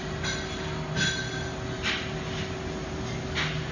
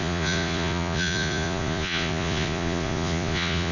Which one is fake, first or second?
second